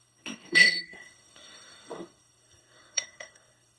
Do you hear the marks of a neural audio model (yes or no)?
yes